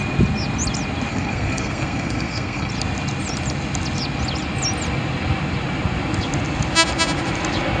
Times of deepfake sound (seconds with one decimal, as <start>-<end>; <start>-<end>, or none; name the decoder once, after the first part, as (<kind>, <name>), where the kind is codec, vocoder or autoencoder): 1.1-2.7 (codec, SNAC)